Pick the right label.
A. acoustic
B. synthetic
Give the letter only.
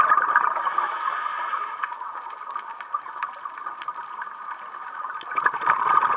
A